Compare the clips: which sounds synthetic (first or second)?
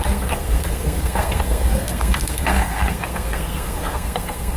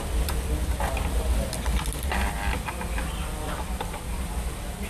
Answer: first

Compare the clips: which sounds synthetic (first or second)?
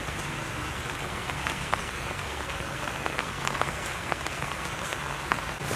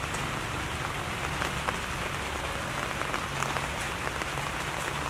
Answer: first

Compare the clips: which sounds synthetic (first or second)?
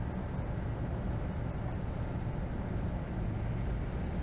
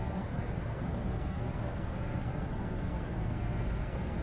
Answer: second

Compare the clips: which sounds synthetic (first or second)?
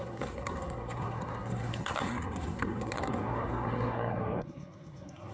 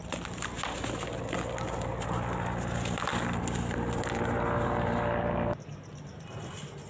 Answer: first